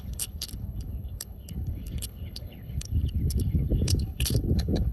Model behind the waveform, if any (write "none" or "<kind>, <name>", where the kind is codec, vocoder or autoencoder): codec, HILCodec